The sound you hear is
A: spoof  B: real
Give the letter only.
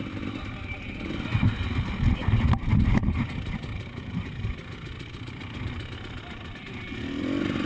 B